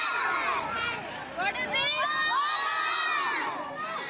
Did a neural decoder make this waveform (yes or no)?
no